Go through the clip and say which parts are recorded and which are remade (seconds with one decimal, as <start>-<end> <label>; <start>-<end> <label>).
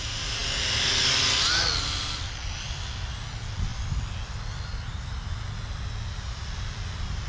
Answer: 0.0-7.3 recorded